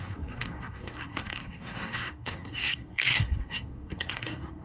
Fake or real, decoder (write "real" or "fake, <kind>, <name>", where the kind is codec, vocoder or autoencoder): fake, codec, SNAC